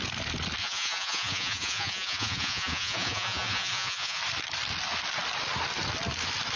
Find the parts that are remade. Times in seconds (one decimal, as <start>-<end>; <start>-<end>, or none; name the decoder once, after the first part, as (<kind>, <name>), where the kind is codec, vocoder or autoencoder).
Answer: 0.6-4.2 (vocoder, Vocos)